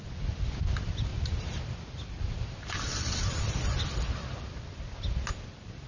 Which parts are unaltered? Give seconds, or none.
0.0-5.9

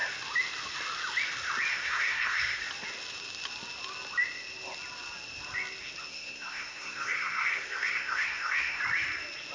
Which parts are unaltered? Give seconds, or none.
0.0-1.7; 2.6-6.1; 8.8-9.5

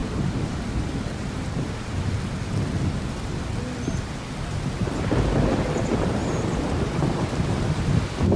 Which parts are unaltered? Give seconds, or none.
2.0-6.2; 7.7-8.4